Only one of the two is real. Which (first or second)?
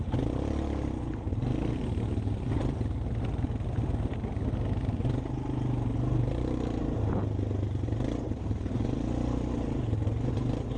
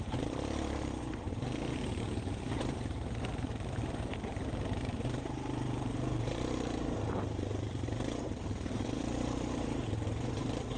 first